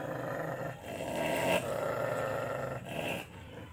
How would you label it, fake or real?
real